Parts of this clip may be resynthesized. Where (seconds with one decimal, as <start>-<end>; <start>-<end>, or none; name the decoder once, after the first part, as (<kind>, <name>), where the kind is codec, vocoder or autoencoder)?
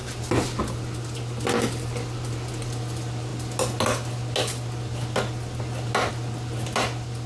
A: none